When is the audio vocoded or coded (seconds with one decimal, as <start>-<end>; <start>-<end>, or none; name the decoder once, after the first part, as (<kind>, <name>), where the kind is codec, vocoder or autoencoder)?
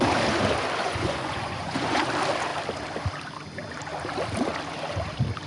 0.8-2.0 (vocoder, Vocos)